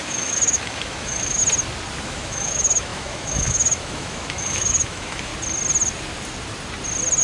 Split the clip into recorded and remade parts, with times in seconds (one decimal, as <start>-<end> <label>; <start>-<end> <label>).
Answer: 0.0-1.4 remade; 1.4-2.0 recorded; 2.0-5.3 remade; 5.3-7.2 recorded

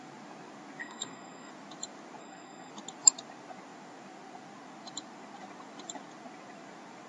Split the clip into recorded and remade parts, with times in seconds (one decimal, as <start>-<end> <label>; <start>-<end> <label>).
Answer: 0.0-0.8 recorded; 0.8-1.5 remade; 1.5-2.2 recorded; 2.2-2.7 remade; 2.7-7.1 recorded

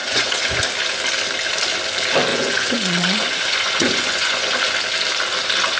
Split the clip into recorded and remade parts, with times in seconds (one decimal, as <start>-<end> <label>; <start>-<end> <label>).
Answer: 0.0-0.6 remade; 0.6-2.3 recorded; 2.3-4.6 remade; 4.6-5.8 recorded

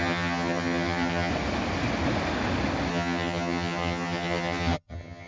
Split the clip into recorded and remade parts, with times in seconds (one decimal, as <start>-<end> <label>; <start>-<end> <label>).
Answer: 0.0-1.3 remade; 1.3-2.9 recorded; 2.9-5.3 remade